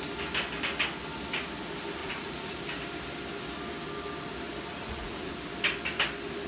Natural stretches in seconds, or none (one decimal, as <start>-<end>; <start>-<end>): 0.0-2.0; 2.6-4.7; 5.3-6.5